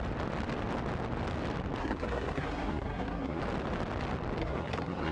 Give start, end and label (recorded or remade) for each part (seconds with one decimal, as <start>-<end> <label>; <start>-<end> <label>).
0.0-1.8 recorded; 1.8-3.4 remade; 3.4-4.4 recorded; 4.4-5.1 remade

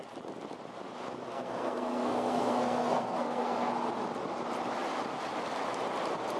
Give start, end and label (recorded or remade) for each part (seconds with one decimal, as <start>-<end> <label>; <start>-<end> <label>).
0.0-1.3 recorded; 1.3-3.7 remade; 3.7-6.4 recorded

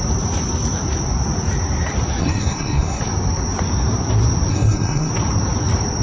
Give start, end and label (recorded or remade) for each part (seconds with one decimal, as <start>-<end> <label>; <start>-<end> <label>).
0.0-2.2 recorded; 2.2-3.0 remade; 3.0-4.5 recorded; 4.5-5.1 remade; 5.1-6.0 recorded

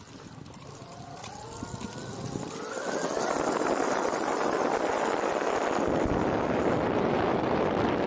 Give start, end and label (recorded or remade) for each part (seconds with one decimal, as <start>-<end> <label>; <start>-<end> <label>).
0.0-8.1 recorded

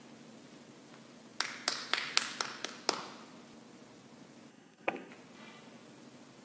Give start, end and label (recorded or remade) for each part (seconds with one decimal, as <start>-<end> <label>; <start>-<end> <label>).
0.0-4.5 recorded; 4.5-5.1 remade; 5.1-6.4 recorded

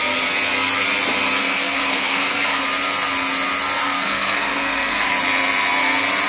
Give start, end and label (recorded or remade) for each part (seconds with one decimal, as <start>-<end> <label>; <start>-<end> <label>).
0.0-1.4 recorded; 1.4-2.6 remade; 2.6-3.8 recorded; 3.8-5.1 remade; 5.1-6.3 recorded